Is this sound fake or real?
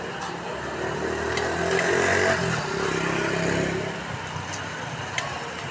real